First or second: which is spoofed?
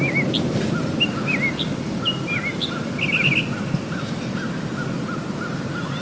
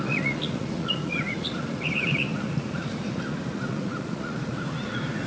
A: second